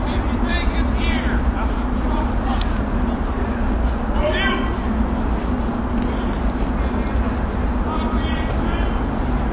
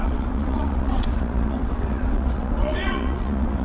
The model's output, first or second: second